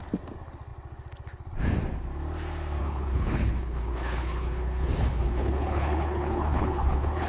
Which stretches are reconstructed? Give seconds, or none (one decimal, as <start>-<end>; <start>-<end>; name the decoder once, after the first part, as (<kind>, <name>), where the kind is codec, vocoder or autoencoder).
2.8-7.3 (codec, HILCodec)